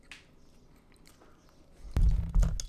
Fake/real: real